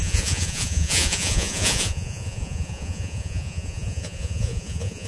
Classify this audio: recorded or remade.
remade